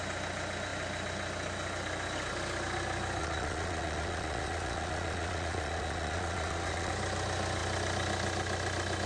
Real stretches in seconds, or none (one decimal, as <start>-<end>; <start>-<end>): 0.0-3.2; 6.9-9.1